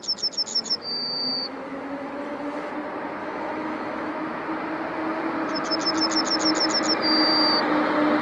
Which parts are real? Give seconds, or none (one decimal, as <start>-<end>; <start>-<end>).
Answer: 0.0-0.5; 2.7-3.2; 4.1-8.2